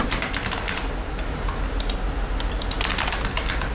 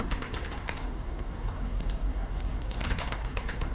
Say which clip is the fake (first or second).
second